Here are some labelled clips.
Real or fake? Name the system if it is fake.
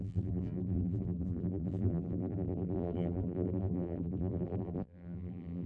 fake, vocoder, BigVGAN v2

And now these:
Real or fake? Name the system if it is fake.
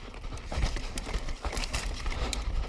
fake, vocoder, BigVGAN v2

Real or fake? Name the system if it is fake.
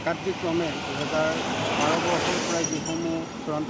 real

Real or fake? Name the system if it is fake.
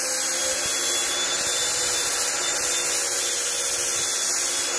real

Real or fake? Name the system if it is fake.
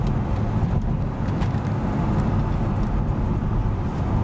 real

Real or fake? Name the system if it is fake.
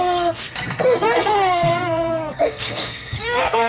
fake, codec, SNAC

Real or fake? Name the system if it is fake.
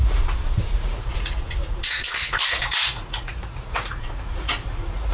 fake, vocoder, Vocos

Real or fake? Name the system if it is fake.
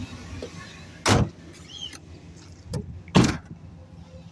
real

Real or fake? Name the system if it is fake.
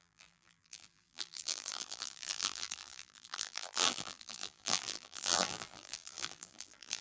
fake, vocoder, BigVGAN v2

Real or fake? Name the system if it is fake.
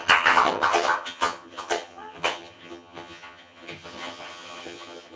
fake, vocoder, HiFi-GAN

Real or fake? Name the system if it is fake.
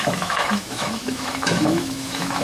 fake, autoencoder, DAC-VAE